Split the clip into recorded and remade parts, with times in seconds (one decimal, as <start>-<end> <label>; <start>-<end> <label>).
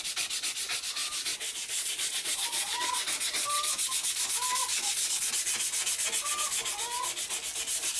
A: 0.0-1.0 recorded; 1.0-2.9 remade; 2.9-4.7 recorded; 4.7-5.3 remade; 5.3-8.0 recorded